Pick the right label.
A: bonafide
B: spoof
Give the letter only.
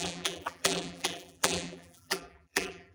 B